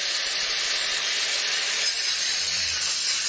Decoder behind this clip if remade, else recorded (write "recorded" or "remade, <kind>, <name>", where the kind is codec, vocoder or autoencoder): remade, vocoder, BigVGAN v2